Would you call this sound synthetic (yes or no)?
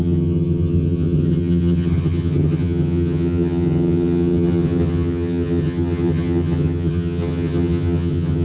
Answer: yes